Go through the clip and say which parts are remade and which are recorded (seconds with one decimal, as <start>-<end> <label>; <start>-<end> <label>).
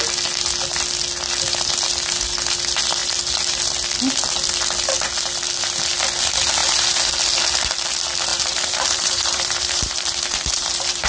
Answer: 0.0-6.6 recorded; 6.6-7.1 remade; 7.1-8.3 recorded; 8.3-11.1 remade